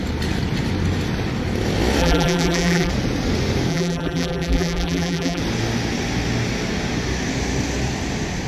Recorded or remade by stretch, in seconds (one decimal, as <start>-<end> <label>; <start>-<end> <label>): 0.0-2.0 recorded; 2.0-2.9 remade; 2.9-3.7 recorded; 3.7-5.4 remade; 5.4-8.5 recorded